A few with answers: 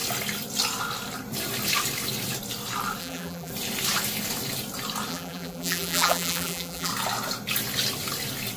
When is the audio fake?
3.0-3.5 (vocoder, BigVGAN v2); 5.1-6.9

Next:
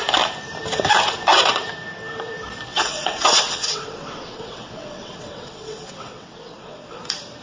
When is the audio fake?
2.7-7.0 (vocoder, WaveNeXt)

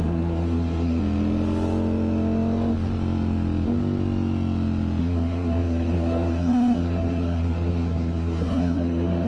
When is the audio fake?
0.0-1.0 (codec, SNAC); 5.0-9.3

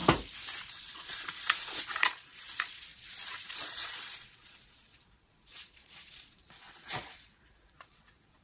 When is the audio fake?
0.6-8.4 (vocoder, Vocos)

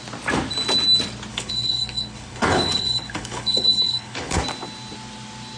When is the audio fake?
1.3-4.4 (codec, HILCodec)

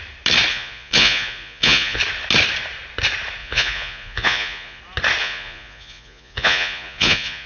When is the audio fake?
0.5-2.0 (vocoder, Vocos); 3.4-4.8; 5.2-7.5

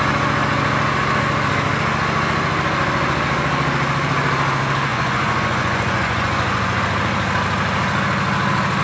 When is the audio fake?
4.9-6.8 (vocoder, Vocos)

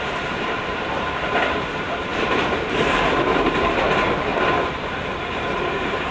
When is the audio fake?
0.0-4.3 (vocoder, BigVGAN v2); 5.3-6.1